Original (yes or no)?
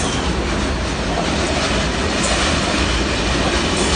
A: yes